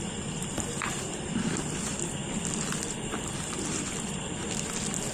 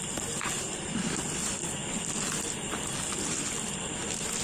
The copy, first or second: first